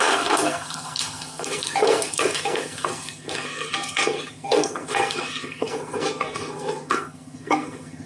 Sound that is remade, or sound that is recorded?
remade